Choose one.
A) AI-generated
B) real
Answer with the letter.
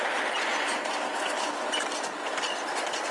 B